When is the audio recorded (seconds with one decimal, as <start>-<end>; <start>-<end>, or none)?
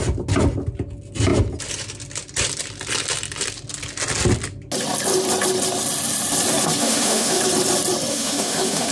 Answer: 0.0-6.8; 7.4-8.1